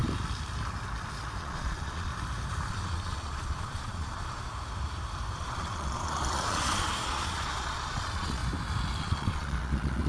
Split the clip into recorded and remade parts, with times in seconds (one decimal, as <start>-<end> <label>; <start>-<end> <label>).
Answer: 0.0-1.4 recorded; 1.4-2.1 remade; 2.1-2.7 recorded; 2.7-4.5 remade; 4.5-5.4 recorded; 5.4-8.4 remade; 8.4-9.0 recorded; 9.0-10.1 remade